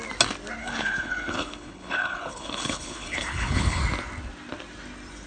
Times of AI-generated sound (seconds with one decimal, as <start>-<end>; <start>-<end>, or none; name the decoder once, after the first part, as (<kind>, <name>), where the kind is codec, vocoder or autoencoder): 0.6-3.8 (codec, HILCodec)